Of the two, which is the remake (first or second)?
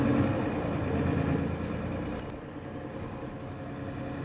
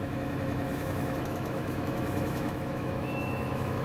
second